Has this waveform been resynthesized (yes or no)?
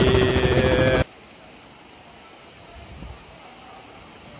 no